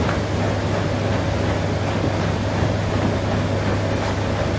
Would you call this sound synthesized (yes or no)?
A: no